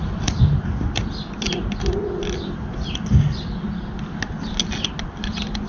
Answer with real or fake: real